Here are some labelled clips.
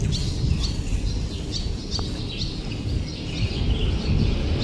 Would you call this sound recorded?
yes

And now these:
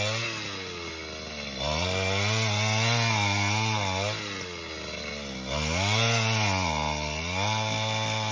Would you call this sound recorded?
yes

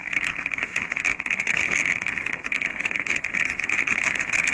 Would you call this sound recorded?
no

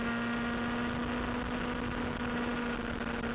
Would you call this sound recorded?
yes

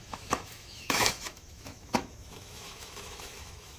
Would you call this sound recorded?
no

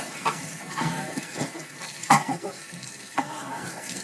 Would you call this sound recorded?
no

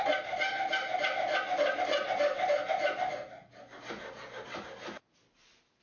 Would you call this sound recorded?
yes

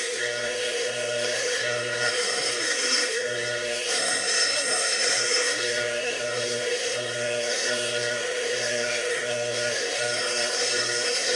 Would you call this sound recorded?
no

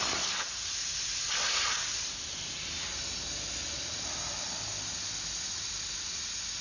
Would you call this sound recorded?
yes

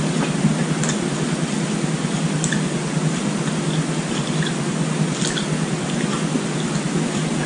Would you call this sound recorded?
yes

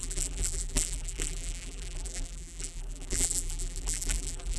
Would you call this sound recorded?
no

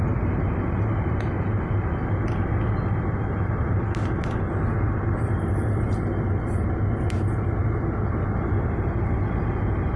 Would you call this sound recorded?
yes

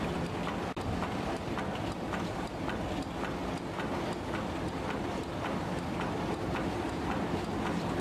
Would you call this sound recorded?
yes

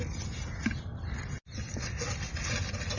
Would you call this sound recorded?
yes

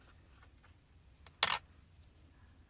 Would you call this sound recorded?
yes